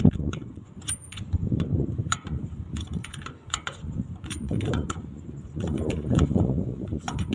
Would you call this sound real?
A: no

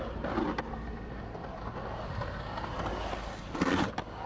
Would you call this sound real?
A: yes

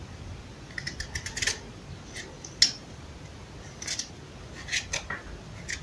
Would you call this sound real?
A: yes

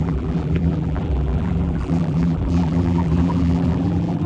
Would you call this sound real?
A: no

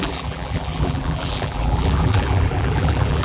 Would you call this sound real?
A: no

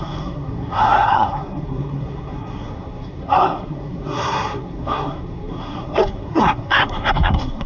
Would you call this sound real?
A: no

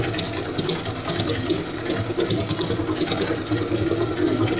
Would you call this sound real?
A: yes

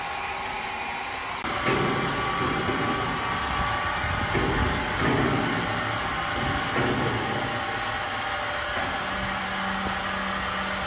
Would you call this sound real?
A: yes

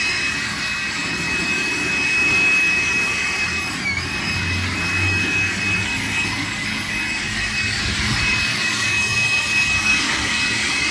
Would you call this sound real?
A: no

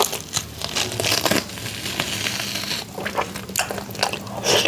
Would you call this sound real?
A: yes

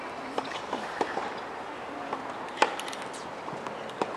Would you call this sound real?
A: yes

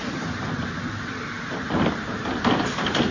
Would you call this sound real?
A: yes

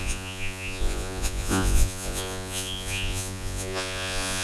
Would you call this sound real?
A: no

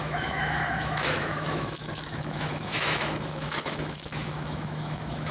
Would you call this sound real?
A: no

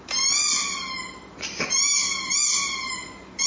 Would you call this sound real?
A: yes